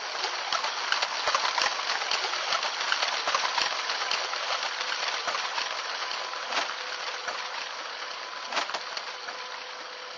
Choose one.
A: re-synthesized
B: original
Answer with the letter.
B